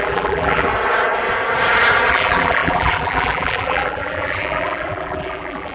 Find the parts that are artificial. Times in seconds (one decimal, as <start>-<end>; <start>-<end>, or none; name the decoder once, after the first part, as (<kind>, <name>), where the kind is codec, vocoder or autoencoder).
0.0-0.7 (vocoder, BigVGAN v2); 2.1-5.7